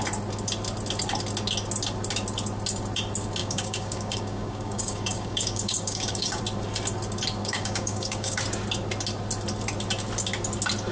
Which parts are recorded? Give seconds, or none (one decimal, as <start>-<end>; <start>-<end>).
0.0-3.4; 6.4-7.4; 8.4-10.9

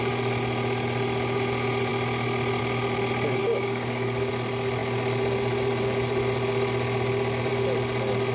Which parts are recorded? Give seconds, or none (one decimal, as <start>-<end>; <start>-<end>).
0.0-3.4; 4.3-8.3

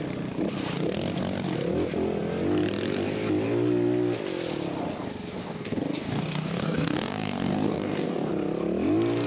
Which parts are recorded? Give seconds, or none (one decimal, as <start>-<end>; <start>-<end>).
0.0-5.4; 8.3-9.3

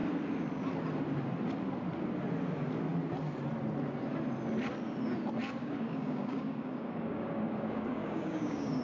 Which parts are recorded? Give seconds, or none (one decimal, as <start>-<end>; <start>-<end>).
0.0-5.6

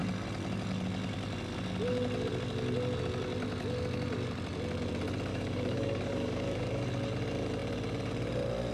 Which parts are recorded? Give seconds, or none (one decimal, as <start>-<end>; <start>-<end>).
0.0-5.3; 6.8-8.7

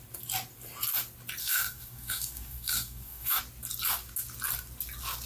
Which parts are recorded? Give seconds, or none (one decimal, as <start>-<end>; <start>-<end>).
0.0-1.4; 3.4-5.3

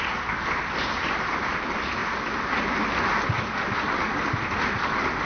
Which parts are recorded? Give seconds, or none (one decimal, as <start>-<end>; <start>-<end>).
0.0-5.2